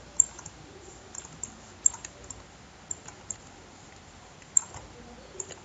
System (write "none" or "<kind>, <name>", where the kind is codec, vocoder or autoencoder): none